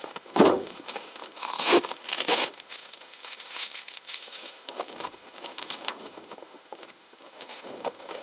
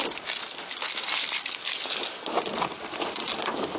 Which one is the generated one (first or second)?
first